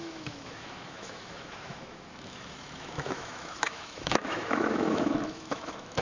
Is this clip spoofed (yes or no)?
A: yes